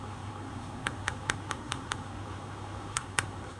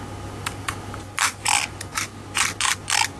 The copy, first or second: first